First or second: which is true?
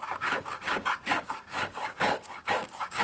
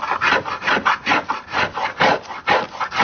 second